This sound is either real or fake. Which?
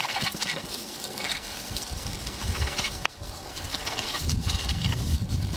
fake